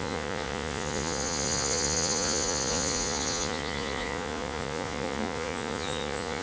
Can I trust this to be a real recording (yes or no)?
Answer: no